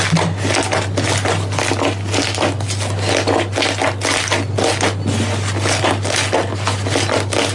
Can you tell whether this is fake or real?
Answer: real